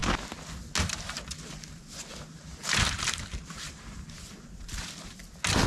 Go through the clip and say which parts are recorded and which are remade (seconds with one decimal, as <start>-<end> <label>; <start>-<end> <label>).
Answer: 0.0-2.6 recorded; 2.6-5.2 remade; 5.2-5.7 recorded